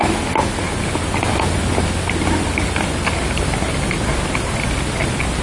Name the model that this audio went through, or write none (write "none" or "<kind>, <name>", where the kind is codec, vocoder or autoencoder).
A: none